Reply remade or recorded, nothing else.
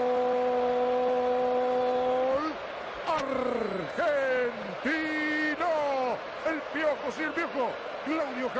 recorded